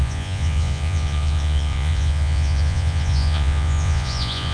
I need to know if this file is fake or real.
fake